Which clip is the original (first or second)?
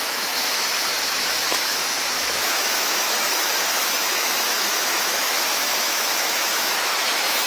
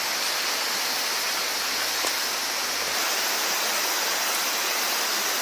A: second